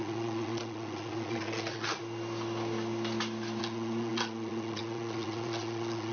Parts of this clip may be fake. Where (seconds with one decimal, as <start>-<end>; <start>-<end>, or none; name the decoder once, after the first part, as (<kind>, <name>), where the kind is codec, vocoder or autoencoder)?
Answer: 0.0-2.0 (vocoder, Vocos); 3.6-6.1